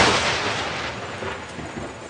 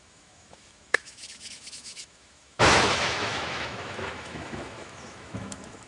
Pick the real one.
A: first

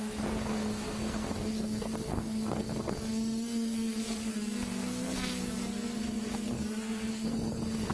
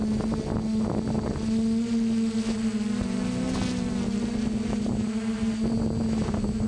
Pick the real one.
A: second